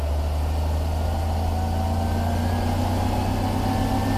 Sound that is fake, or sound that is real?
real